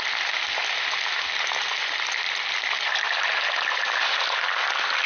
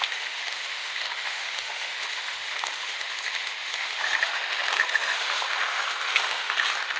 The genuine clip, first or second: first